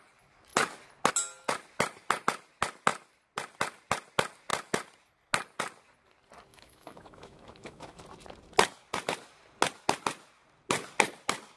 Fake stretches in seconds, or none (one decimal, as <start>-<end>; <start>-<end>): 6.5-8.0